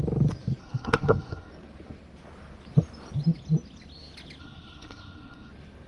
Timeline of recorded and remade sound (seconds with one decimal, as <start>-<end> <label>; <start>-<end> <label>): 0.0-0.6 recorded; 0.6-1.5 remade; 1.5-4.4 recorded; 4.4-5.5 remade; 5.5-5.9 recorded

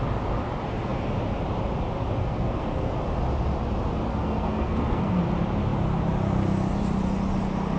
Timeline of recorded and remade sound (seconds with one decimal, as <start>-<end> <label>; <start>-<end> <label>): 0.0-2.2 recorded; 2.2-2.9 remade; 2.9-4.1 recorded; 4.1-5.2 remade; 5.2-7.8 recorded

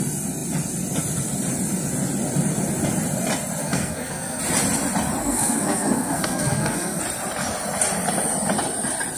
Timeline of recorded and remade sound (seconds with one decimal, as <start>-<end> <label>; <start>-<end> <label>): 0.0-3.6 recorded; 3.6-4.4 remade; 4.4-5.2 recorded; 5.2-7.0 remade; 7.0-9.2 recorded

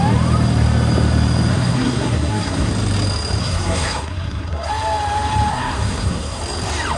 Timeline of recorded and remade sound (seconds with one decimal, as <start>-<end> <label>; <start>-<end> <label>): 0.0-1.5 recorded; 1.5-2.7 remade; 2.7-3.4 recorded; 3.4-4.7 remade; 4.7-5.5 recorded; 5.5-6.4 remade; 6.4-7.0 recorded

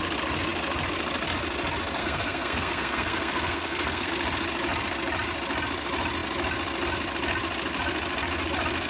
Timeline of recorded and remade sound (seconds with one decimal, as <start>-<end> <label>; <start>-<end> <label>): 0.0-2.0 recorded; 2.0-4.1 remade; 4.1-8.9 recorded